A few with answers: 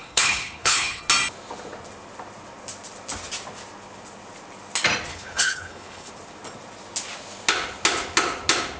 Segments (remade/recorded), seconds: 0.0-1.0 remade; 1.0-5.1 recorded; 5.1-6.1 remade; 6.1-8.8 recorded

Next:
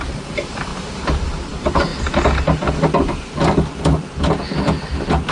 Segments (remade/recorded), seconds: 0.0-0.7 remade; 0.7-1.5 recorded; 1.5-1.9 remade; 1.9-5.3 recorded

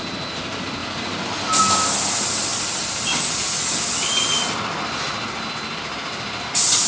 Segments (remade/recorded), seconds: 0.0-0.8 recorded; 0.8-1.6 remade; 1.6-6.9 recorded

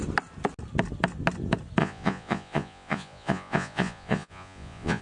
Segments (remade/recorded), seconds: 0.0-1.8 recorded; 1.8-5.0 remade

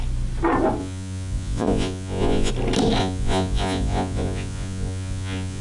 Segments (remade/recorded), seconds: 0.0-0.8 recorded; 0.8-2.5 remade; 2.5-3.0 recorded; 3.0-5.6 remade

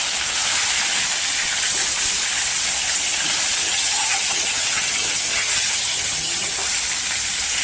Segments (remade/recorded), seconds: 0.0-3.6 recorded; 3.6-6.5 remade; 6.5-7.6 recorded